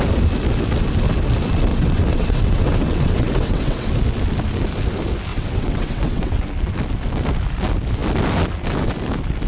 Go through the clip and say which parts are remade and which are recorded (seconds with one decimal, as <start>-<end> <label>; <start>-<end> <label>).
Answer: 0.0-1.7 recorded; 1.7-3.9 remade; 3.9-5.3 recorded; 5.3-6.4 remade; 6.4-9.5 recorded

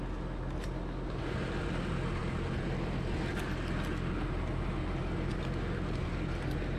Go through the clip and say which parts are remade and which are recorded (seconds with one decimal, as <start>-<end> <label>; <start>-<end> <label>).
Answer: 0.0-6.8 recorded

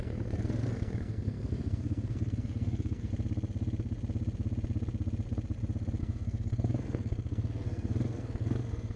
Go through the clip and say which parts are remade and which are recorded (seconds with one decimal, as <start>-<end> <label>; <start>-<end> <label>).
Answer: 0.0-3.1 remade; 3.1-6.0 recorded; 6.0-9.0 remade

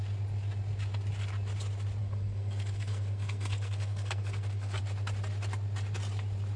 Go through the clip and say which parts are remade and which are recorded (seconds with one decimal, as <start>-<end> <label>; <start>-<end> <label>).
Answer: 0.0-2.0 recorded; 2.0-4.8 remade; 4.8-6.6 recorded

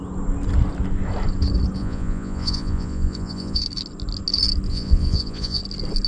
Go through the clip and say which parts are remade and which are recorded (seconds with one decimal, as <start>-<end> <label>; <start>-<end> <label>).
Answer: 0.0-1.8 recorded; 1.8-3.6 remade; 3.6-4.7 recorded; 4.7-5.6 remade; 5.6-6.1 recorded

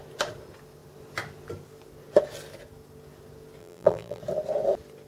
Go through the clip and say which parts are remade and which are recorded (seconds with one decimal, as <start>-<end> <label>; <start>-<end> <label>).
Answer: 0.0-3.6 recorded; 3.6-4.2 remade; 4.2-5.1 recorded

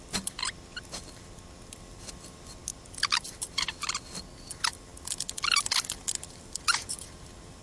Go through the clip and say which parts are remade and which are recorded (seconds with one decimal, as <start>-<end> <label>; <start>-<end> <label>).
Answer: 0.0-7.6 recorded